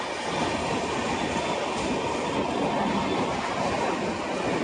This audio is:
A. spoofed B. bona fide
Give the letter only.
B